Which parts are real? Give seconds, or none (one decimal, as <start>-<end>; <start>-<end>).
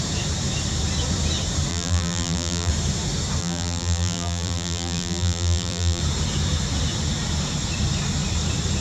0.0-1.7; 2.7-3.4; 6.0-8.8